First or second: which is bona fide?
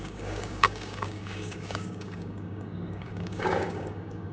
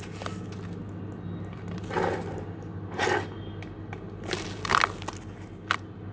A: second